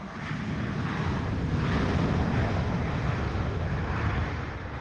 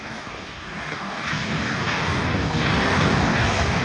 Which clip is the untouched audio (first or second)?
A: first